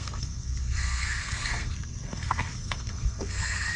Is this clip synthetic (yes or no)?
yes